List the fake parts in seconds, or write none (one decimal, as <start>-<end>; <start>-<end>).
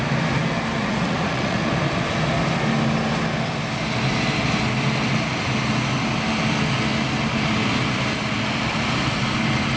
0.8-1.7